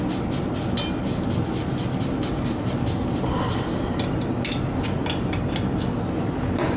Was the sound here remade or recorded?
recorded